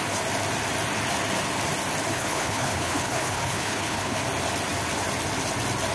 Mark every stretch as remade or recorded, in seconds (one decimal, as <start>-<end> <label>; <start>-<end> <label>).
0.0-2.1 recorded; 2.1-4.2 remade; 4.2-5.9 recorded